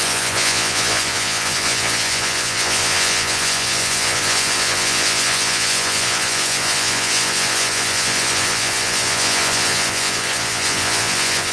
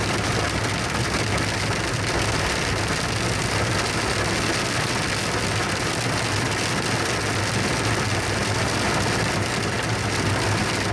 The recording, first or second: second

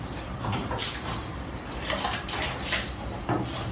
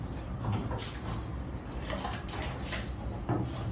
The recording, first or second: second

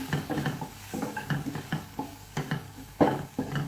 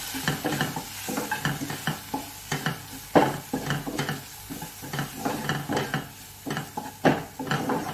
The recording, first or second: second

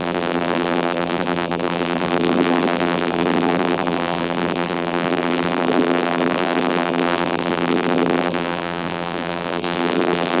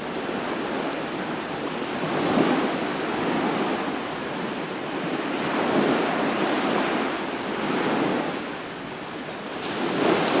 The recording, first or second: second